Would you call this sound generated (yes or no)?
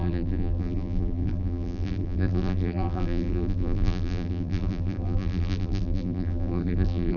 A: yes